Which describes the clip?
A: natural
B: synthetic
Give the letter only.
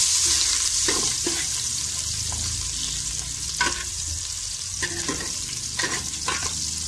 A